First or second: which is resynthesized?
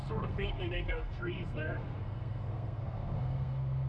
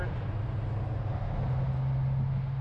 first